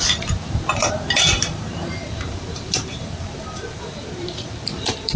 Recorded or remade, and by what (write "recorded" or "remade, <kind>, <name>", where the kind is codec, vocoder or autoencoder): remade, vocoder, BigVGAN v2